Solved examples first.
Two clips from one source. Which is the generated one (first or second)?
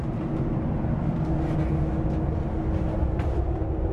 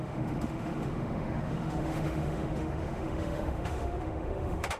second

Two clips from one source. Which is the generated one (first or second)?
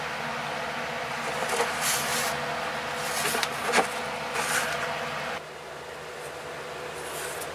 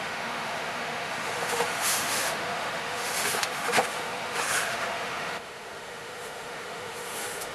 second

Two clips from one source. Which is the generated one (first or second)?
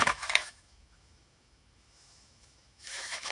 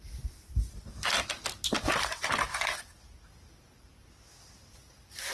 first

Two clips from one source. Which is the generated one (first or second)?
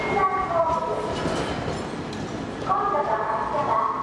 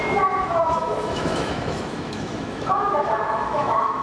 second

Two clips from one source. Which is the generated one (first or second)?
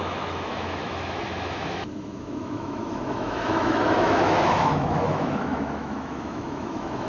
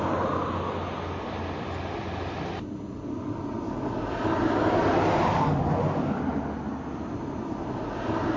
first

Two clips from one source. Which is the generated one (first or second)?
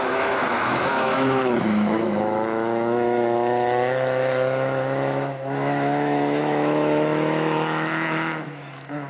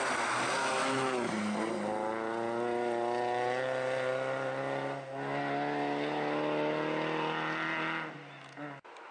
first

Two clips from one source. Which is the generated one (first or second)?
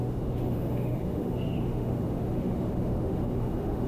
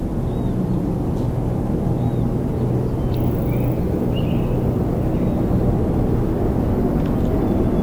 first